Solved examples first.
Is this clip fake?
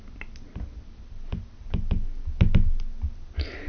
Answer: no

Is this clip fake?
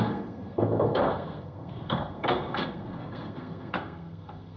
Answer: yes